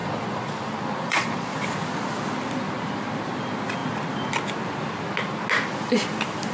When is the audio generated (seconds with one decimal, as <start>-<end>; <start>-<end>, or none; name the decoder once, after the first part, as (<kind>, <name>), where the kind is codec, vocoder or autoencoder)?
0.0-1.5 (vocoder, Vocos)